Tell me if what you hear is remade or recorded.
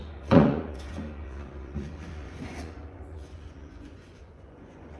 remade